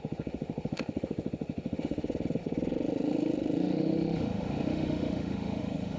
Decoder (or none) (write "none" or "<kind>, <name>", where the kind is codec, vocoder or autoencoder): autoencoder, DAC-VAE